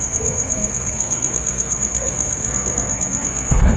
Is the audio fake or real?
fake